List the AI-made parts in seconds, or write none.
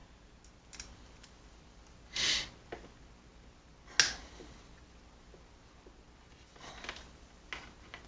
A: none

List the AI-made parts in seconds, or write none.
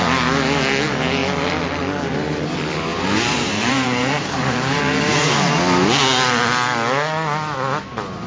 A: 2.9-4.8 (vocoder, BigVGAN v2)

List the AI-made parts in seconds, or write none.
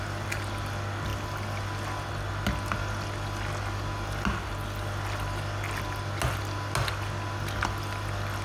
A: none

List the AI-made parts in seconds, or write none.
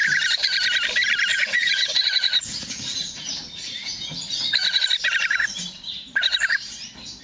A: 1.3-4.8 (vocoder, Vocos)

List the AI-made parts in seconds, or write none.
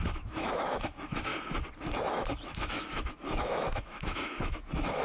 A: 0.0-1.3 (autoencoder, DAC-VAE); 2.1-5.0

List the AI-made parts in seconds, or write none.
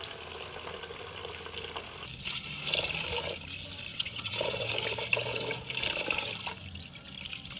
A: 3.9-4.7 (vocoder, WaveNeXt)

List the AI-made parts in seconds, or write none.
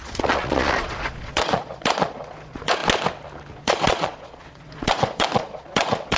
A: 0.0-2.8 (vocoder, Vocos); 3.5-6.2